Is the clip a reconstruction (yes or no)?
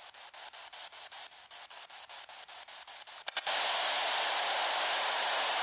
no